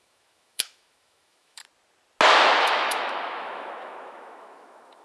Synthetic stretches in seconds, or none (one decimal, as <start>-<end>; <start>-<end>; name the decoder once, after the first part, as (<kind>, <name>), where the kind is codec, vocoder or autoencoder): 0.0-1.6 (autoencoder, DAC-VAE); 2.6-5.0